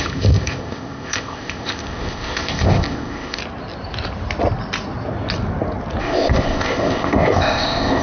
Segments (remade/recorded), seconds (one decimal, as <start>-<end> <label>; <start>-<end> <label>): 0.0-3.4 remade; 3.4-6.0 recorded; 6.0-8.0 remade